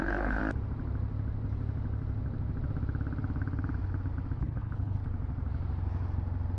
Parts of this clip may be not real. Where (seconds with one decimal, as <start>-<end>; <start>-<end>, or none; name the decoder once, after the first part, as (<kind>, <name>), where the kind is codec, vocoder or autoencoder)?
0.0-0.4 (codec, HILCodec); 4.4-5.0